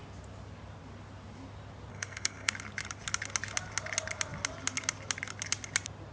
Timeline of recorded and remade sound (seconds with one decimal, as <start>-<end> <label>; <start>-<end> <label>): 0.0-1.9 recorded; 1.9-2.5 remade; 2.5-6.1 recorded